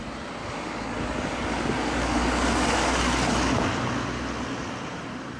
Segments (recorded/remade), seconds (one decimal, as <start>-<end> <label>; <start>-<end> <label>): 0.0-0.4 recorded; 0.4-3.6 remade; 3.6-5.4 recorded